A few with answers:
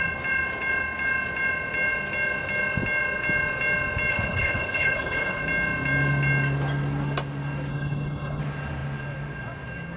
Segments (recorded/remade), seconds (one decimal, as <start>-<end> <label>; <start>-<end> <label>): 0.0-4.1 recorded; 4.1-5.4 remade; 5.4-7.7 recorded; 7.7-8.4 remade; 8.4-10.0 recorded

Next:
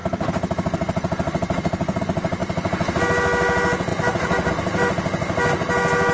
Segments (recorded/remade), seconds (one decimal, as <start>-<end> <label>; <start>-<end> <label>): 0.0-6.1 recorded

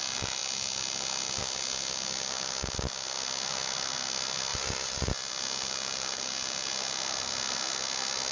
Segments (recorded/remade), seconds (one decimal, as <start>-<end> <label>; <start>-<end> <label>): 0.0-4.5 recorded; 4.5-5.3 remade; 5.3-8.3 recorded

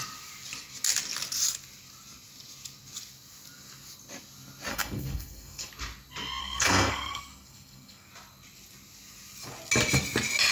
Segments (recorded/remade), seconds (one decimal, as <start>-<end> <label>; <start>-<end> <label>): 0.0-4.7 recorded; 4.7-5.7 remade; 5.7-6.4 recorded; 6.4-8.1 remade; 8.1-10.5 recorded